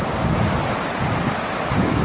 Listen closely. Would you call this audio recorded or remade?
remade